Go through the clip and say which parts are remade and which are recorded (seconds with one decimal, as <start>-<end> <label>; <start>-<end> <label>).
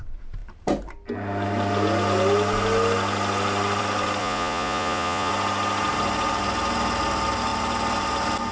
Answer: 0.0-4.2 recorded; 4.2-5.3 remade; 5.3-8.5 recorded